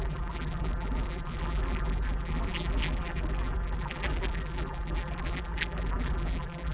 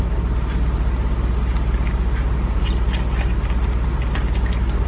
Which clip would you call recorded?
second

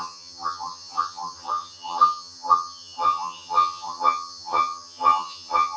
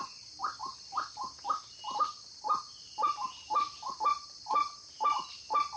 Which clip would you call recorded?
second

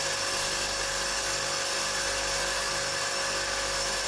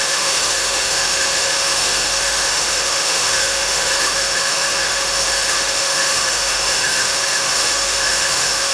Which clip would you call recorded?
first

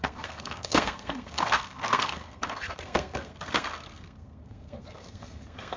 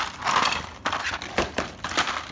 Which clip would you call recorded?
second